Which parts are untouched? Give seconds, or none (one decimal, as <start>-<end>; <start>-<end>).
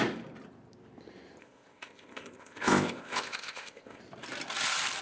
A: 0.0-1.4; 4.0-5.0